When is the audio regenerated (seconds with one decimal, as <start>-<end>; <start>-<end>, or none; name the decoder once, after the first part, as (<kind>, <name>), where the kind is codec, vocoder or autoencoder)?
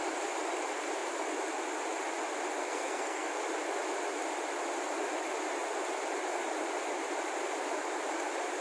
2.6-3.4 (codec, SNAC)